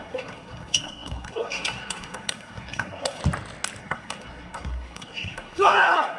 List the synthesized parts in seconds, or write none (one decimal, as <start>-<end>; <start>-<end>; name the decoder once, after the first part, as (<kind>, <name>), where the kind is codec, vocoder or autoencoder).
0.0-3.2 (codec, SNAC); 3.8-6.2